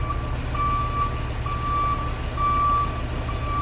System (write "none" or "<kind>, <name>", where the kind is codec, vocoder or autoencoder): none